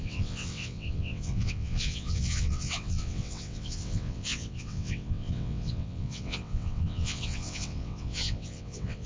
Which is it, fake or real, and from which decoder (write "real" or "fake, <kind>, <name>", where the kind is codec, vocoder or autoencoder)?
fake, vocoder, WaveNeXt